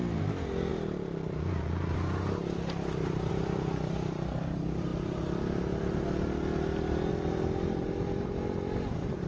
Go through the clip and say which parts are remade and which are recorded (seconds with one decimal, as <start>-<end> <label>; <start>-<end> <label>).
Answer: 0.0-9.3 recorded